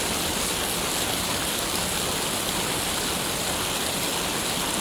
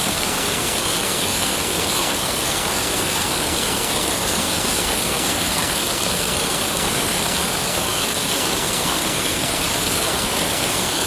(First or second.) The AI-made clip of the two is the second